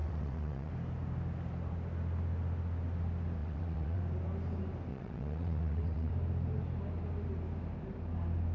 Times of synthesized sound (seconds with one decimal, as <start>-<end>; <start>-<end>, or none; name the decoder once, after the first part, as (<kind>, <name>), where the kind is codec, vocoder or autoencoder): 0.0-0.7 (vocoder, WaveNeXt); 3.4-4.0; 4.9-6.1